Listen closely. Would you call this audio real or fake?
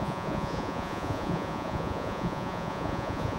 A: fake